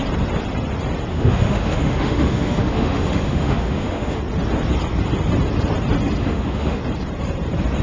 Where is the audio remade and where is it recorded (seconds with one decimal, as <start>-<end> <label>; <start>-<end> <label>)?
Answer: 0.0-1.1 recorded; 1.1-4.2 remade; 4.2-6.2 recorded; 6.2-6.8 remade; 6.8-7.8 recorded